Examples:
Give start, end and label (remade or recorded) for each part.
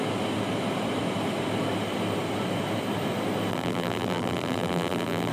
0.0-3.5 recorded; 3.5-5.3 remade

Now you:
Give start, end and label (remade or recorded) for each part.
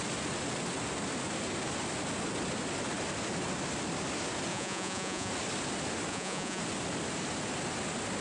0.0-4.5 recorded; 4.5-5.3 remade; 5.3-6.1 recorded; 6.1-6.6 remade; 6.6-8.2 recorded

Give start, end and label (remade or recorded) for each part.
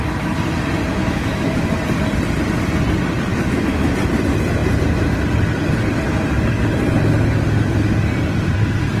0.0-1.0 recorded; 1.0-1.7 remade; 1.7-3.3 recorded; 3.3-3.9 remade; 3.9-9.0 recorded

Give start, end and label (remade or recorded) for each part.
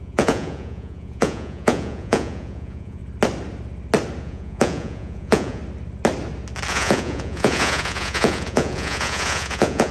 0.0-3.0 remade; 3.0-4.2 recorded; 4.2-5.6 remade; 5.6-6.7 recorded; 6.7-9.9 remade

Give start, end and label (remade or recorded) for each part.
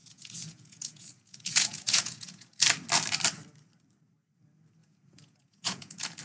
0.0-2.6 remade; 2.6-4.8 recorded; 4.8-6.2 remade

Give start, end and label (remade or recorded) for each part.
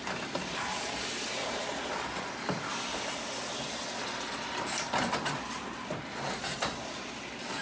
0.0-7.6 recorded